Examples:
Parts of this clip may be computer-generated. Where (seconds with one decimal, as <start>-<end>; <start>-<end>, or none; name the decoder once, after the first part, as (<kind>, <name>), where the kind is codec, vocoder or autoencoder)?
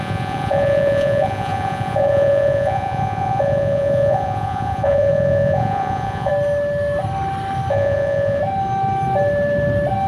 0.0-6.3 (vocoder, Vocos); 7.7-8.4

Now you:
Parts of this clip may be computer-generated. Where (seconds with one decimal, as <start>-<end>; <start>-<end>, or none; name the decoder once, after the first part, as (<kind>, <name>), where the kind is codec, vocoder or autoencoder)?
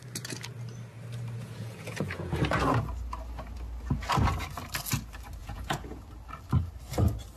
1.4-2.4 (vocoder, Vocos); 5.4-6.0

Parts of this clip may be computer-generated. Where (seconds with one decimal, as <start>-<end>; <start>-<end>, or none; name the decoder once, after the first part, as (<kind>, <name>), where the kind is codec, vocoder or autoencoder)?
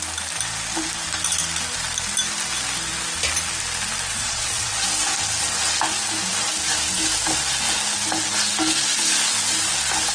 4.1-4.7 (vocoder, Vocos)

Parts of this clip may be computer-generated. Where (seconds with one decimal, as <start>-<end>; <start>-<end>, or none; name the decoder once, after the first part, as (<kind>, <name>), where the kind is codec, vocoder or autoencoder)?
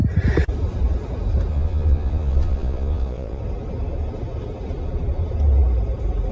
1.5-3.4 (vocoder, Vocos)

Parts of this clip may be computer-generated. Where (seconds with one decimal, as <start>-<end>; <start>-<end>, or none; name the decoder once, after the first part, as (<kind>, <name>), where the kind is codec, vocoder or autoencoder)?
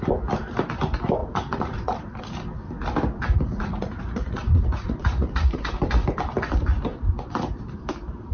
1.2-2.0 (vocoder, Vocos); 3.5-5.8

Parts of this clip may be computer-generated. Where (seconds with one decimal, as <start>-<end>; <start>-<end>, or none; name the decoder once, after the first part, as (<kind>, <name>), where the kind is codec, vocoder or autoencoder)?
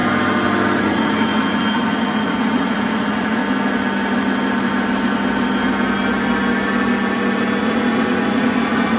0.8-3.4 (vocoder, Vocos); 7.6-9.0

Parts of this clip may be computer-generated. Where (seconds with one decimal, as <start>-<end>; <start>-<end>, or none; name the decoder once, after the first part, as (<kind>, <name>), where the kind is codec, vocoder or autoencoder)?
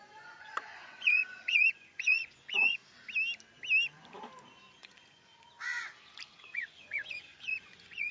0.0-2.8 (vocoder, Vocos); 4.8-5.3; 6.3-8.1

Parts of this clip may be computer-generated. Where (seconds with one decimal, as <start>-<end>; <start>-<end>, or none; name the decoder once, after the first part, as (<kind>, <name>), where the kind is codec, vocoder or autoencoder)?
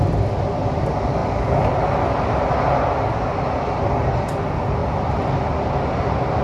none